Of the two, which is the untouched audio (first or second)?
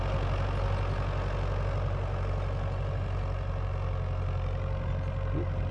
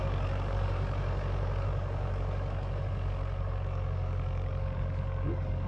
first